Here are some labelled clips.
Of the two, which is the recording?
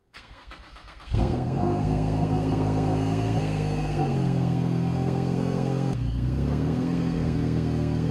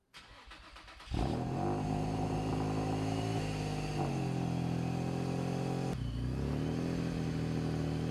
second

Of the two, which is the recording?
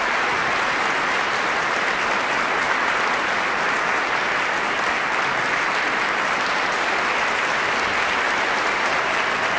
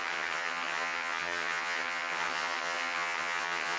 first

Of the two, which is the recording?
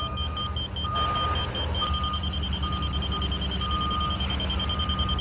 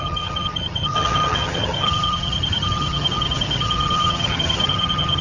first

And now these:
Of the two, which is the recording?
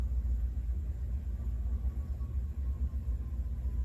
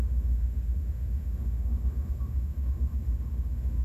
first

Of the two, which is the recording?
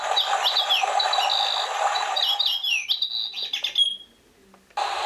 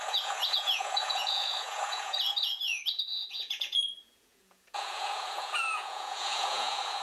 first